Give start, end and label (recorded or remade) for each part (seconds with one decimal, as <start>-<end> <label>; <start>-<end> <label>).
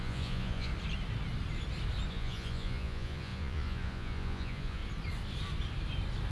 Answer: 0.0-0.7 remade; 0.7-2.1 recorded; 2.1-4.8 remade; 4.8-6.3 recorded